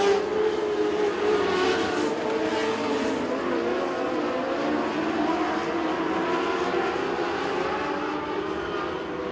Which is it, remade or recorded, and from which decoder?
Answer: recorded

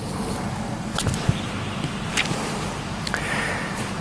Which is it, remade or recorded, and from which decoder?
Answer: recorded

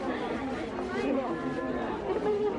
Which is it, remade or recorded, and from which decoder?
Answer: recorded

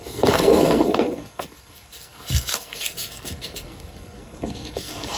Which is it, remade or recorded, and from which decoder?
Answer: remade, codec, SNAC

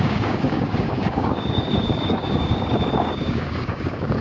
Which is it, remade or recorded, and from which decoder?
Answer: remade, codec, DAC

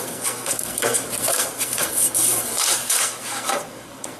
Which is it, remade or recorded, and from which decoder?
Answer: remade, codec, SNAC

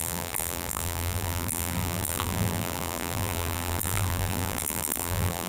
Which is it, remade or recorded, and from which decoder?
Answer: remade, vocoder, BigVGAN v2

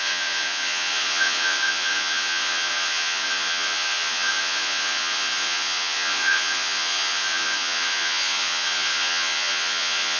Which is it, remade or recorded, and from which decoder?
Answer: remade, vocoder, Vocos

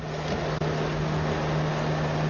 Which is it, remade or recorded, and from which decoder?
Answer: recorded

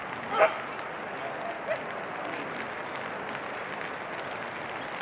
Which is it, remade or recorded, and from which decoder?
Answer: recorded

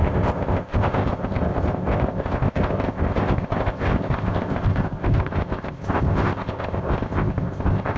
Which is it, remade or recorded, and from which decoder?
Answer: remade, codec, ZipCodec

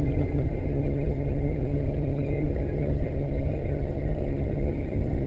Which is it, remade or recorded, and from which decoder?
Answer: remade, vocoder, HiFi-GAN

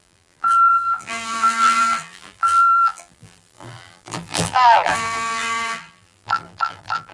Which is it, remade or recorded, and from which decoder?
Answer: remade, vocoder, BigVGAN v2